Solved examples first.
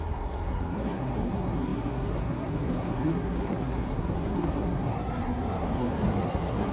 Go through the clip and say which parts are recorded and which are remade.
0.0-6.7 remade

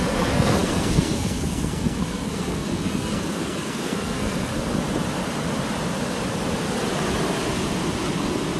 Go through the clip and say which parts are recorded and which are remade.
0.0-4.5 remade; 4.5-8.6 recorded

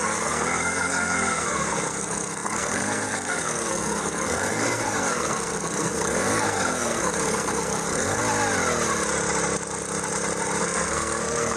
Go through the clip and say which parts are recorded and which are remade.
0.0-8.2 remade; 8.2-10.6 recorded; 10.6-11.6 remade

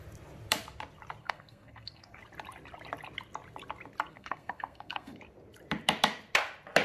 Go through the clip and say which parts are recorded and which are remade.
0.0-1.2 recorded; 1.2-2.2 remade; 2.2-4.1 recorded; 4.1-5.2 remade; 5.2-6.8 recorded

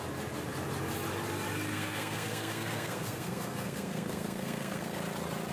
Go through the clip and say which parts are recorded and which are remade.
0.0-1.7 recorded; 1.7-5.0 remade; 5.0-5.5 recorded

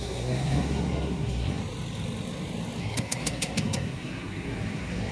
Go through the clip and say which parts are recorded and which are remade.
0.0-1.6 remade; 1.6-2.8 recorded; 2.8-5.1 remade